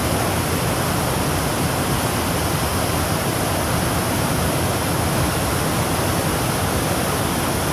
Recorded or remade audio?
recorded